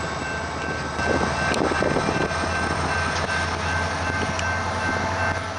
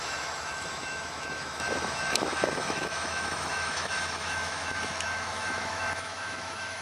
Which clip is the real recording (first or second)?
first